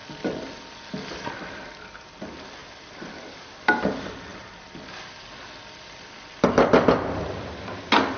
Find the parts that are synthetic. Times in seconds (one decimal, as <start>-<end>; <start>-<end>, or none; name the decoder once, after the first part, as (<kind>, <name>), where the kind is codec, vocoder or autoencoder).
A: 2.6-3.5 (vocoder, BigVGAN v2)